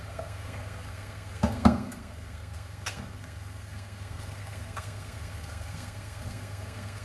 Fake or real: fake